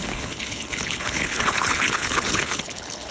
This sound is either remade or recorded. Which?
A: remade